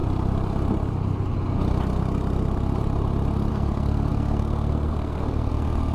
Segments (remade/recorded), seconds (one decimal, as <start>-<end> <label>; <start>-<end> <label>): 0.0-3.5 recorded; 3.5-5.9 remade